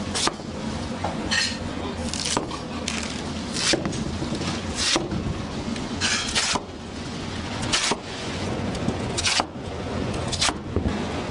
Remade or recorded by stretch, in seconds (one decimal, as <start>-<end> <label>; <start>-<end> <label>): 0.0-2.0 remade; 2.0-4.4 recorded; 4.4-11.3 remade